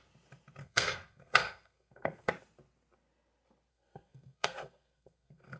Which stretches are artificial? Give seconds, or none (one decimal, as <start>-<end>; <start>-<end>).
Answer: 0.6-2.3; 3.7-5.6